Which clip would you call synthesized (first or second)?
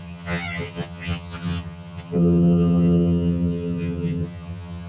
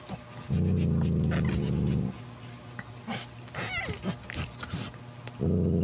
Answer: first